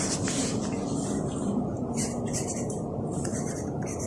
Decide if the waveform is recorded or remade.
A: remade